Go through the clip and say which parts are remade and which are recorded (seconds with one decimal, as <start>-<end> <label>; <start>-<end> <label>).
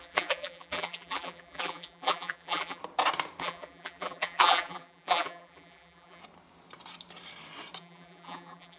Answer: 0.0-2.8 remade; 2.8-3.4 recorded; 3.4-6.2 remade; 6.2-7.8 recorded; 7.8-8.8 remade